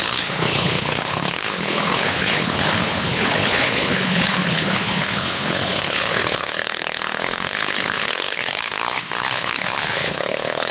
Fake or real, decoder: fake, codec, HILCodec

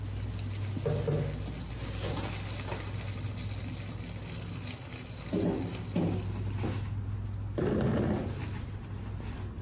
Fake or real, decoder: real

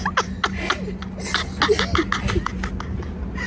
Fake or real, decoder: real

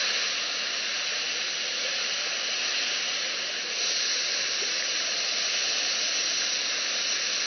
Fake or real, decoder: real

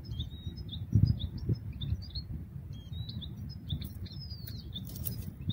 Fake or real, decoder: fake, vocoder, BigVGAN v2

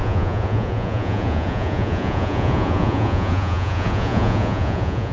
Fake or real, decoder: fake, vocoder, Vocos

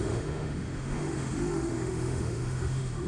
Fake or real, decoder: fake, autoencoder, DAC-VAE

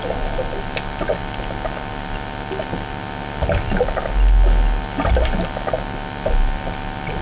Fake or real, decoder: real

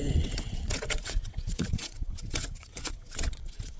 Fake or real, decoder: fake, vocoder, WaveNeXt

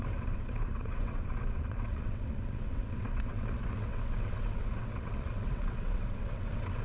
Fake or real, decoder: fake, vocoder, WaveNeXt